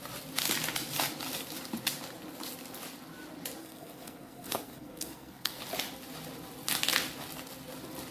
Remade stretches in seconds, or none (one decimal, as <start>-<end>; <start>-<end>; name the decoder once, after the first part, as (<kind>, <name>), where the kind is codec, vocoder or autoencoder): 3.6-5.6 (codec, SNAC)